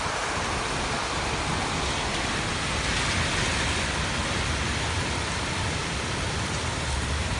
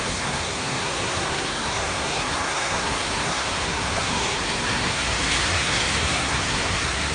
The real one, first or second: first